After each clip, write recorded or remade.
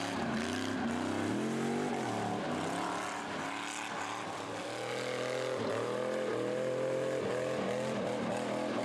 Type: recorded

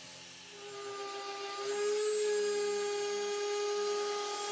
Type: recorded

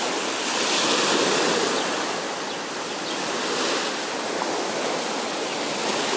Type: recorded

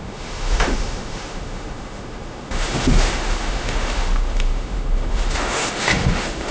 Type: remade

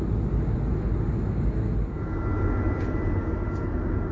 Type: recorded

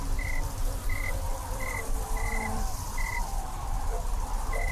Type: remade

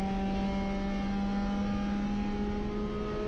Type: recorded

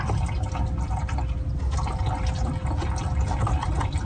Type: recorded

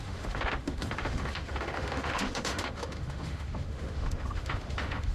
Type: remade